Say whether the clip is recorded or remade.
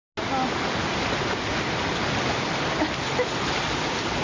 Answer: recorded